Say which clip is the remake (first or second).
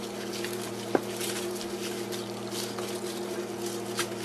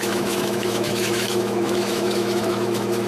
second